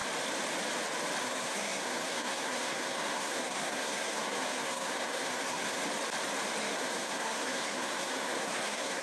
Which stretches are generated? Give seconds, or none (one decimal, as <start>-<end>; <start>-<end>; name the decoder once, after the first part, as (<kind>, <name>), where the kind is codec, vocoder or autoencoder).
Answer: 1.2-5.8 (codec, SNAC); 6.6-9.0